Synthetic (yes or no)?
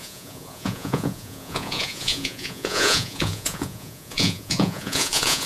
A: yes